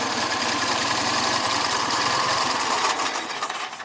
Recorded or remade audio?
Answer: remade